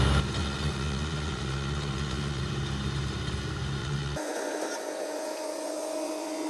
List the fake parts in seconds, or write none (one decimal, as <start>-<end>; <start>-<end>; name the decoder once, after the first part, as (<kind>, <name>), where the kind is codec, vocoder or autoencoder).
0.4-2.4 (vocoder, Vocos); 3.8-6.5